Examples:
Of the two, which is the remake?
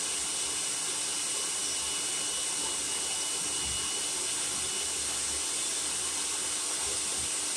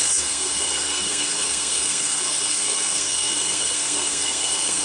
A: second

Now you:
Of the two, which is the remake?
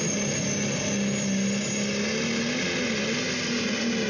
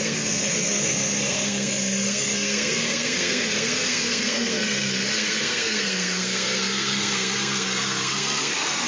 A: second